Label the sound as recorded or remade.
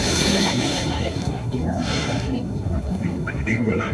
remade